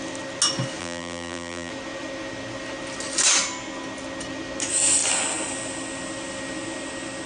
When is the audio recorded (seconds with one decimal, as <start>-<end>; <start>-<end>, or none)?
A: 0.0-0.8; 1.7-7.3